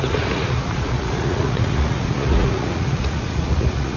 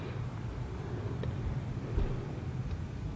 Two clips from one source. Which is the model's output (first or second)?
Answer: first